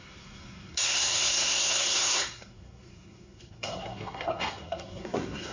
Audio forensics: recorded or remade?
remade